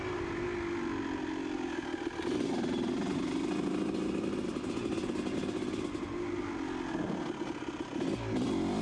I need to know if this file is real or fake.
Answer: real